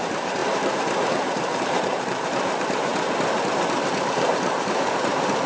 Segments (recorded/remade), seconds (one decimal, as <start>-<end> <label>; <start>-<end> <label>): 0.0-2.9 remade; 2.9-4.0 recorded; 4.0-5.5 remade

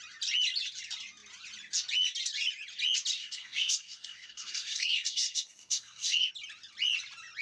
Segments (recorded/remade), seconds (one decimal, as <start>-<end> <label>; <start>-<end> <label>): 0.0-3.2 recorded; 3.2-6.3 remade; 6.3-7.4 recorded

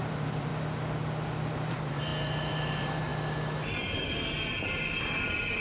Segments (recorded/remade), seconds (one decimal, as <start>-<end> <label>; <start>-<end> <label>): 0.0-0.5 remade; 0.5-1.7 recorded; 1.7-3.1 remade; 3.1-5.6 recorded

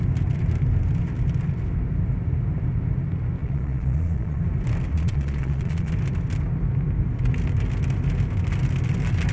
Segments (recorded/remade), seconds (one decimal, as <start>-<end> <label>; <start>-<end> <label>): 0.0-3.4 recorded; 3.4-4.4 remade; 4.4-4.9 recorded; 4.9-5.9 remade; 5.9-9.3 recorded

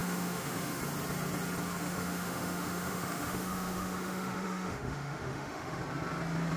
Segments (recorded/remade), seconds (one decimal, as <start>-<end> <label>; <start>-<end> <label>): 0.0-0.8 remade; 0.8-1.8 recorded; 1.8-5.8 remade; 5.8-6.6 recorded

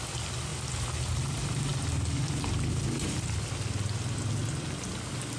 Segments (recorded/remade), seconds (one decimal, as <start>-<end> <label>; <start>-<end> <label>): 0.0-5.4 recorded

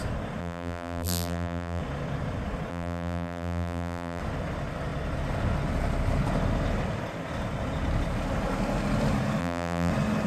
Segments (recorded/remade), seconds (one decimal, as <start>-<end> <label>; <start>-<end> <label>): 0.0-0.4 recorded; 0.4-1.8 remade; 1.8-2.7 recorded; 2.7-4.2 remade; 4.2-9.4 recorded; 9.4-9.9 remade; 9.9-10.3 recorded